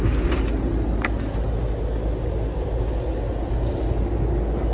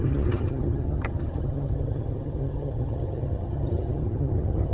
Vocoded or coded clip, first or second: second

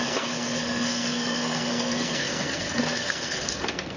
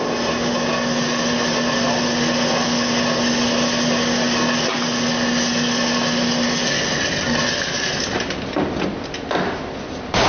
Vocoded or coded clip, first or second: first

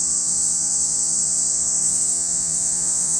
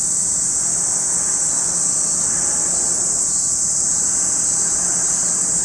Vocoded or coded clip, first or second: first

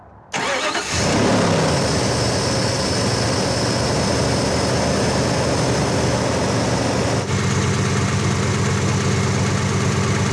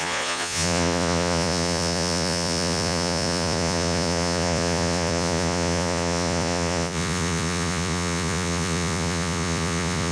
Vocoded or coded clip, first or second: second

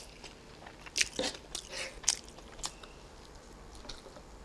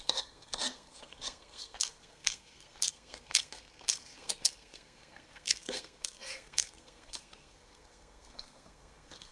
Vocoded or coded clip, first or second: second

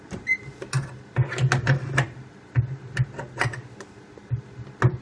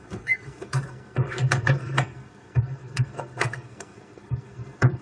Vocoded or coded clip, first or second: second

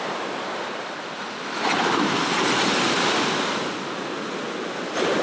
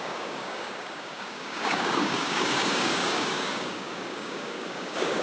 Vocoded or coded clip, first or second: second